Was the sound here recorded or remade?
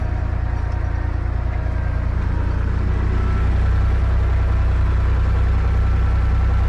recorded